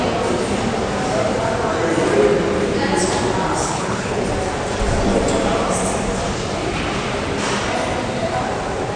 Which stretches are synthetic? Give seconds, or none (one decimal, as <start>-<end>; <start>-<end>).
3.6-4.2